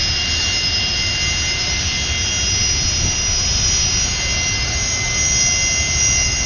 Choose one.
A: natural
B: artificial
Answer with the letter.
A